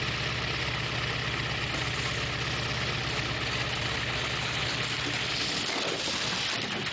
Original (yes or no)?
yes